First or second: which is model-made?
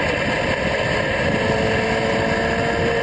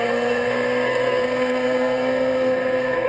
second